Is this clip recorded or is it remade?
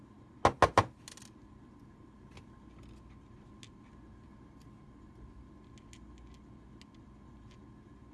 recorded